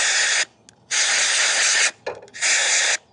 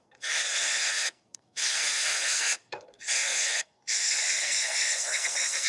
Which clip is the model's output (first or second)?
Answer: second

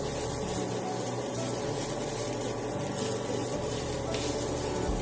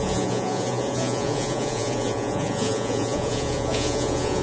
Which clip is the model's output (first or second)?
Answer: second